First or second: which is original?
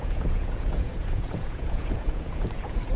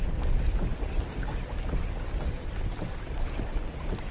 second